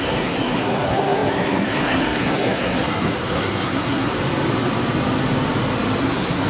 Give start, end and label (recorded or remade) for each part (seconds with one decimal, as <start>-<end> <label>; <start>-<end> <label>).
0.0-4.1 remade; 4.1-6.0 recorded; 6.0-6.5 remade